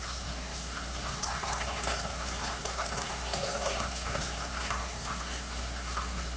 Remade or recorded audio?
remade